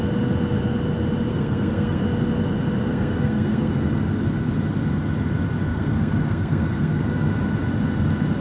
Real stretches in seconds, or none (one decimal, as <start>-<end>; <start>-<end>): 0.0-1.3; 2.0-2.9; 3.7-5.7; 7.3-8.4